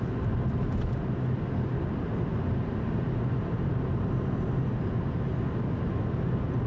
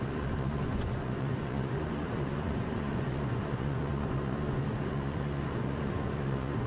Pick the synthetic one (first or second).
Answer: second